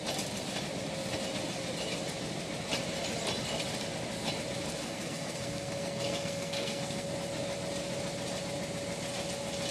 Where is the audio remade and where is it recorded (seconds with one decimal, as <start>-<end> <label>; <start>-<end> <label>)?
0.0-4.8 recorded; 4.8-7.1 remade; 7.1-9.7 recorded